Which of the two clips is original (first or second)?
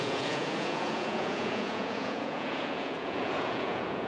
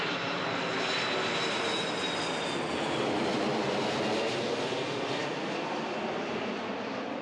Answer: second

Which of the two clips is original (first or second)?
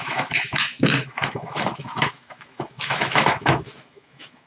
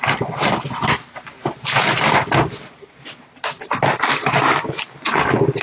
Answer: second